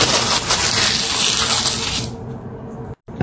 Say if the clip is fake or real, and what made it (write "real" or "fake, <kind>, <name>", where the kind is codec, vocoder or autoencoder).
real